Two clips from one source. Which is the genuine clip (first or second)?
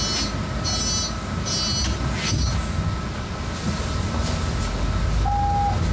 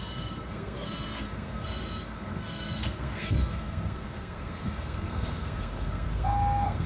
first